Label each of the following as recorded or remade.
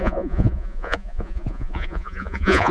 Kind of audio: remade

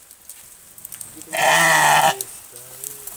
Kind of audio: recorded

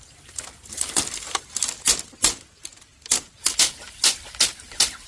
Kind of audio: recorded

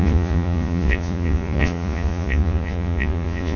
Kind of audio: remade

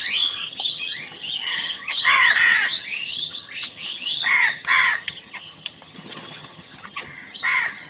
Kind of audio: remade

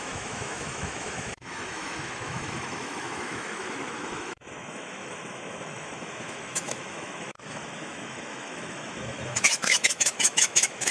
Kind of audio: remade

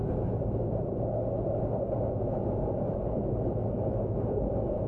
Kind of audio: recorded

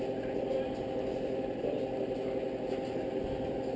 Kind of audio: recorded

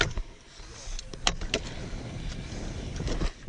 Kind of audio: recorded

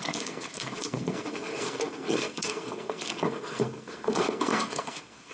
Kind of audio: remade